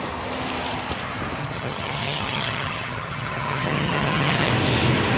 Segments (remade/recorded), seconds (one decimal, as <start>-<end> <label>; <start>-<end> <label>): 0.0-1.4 recorded; 1.4-4.5 remade; 4.5-5.2 recorded